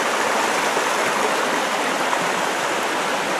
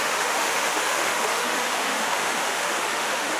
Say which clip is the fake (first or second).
second